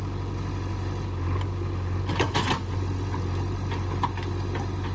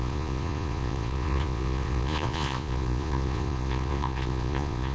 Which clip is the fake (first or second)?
second